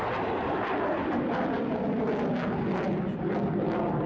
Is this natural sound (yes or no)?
yes